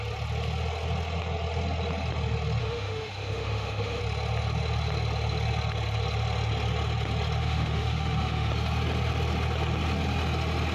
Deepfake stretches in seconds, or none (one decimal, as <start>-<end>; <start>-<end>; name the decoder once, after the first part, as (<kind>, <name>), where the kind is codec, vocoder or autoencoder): 2.6-4.0 (autoencoder, DAC-VAE); 7.4-8.5